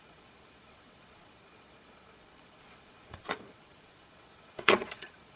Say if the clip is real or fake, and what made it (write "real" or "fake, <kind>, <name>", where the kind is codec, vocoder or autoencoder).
fake, vocoder, Vocos